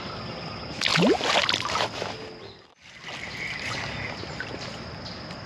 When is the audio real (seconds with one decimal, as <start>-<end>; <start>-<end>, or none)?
0.0-5.5